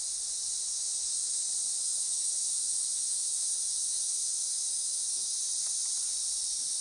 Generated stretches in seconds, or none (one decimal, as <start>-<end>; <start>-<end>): 0.7-1.4; 1.8-5.3